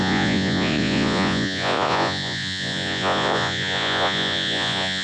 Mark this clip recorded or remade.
remade